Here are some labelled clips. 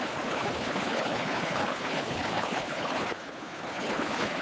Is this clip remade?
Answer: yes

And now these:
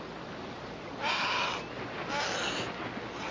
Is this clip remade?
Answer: no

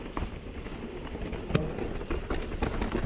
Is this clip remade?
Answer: no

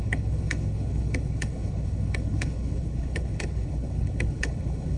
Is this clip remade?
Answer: yes